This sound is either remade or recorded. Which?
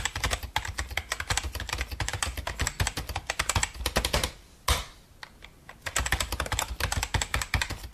recorded